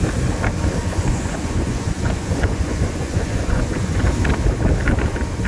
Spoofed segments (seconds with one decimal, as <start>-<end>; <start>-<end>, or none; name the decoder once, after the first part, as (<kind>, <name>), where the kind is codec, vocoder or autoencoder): 0.8-4.1 (vocoder, Vocos)